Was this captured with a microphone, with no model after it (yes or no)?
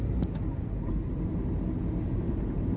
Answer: yes